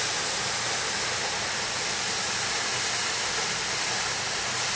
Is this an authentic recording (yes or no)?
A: yes